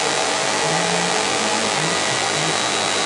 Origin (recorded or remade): remade